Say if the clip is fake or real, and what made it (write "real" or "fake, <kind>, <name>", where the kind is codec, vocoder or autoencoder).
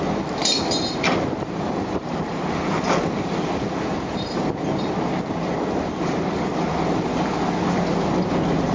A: real